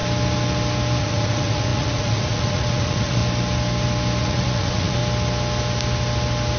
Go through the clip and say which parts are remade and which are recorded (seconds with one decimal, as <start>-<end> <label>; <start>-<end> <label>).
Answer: 0.0-1.0 recorded; 1.0-3.2 remade; 3.2-4.2 recorded; 4.2-5.0 remade; 5.0-6.6 recorded